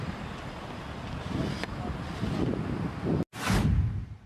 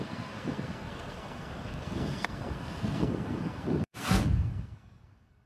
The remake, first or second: second